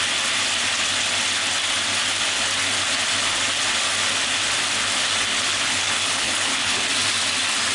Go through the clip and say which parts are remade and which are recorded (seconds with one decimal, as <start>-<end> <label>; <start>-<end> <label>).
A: 0.0-5.3 recorded; 5.3-6.8 remade; 6.8-7.7 recorded